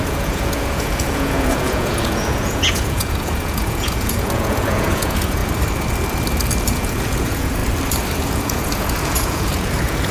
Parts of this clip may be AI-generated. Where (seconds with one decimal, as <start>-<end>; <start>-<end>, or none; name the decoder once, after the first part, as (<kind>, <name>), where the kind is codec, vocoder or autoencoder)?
0.0-5.4 (vocoder, Vocos); 6.7-7.6; 8.2-10.1